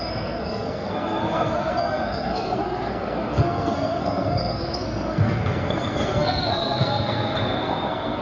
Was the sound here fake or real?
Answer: fake